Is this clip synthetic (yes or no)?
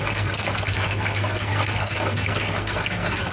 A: yes